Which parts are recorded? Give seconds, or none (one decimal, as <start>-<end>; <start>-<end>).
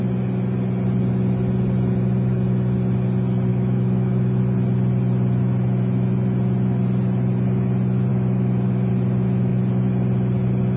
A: 0.0-3.5; 4.4-8.1; 8.9-10.8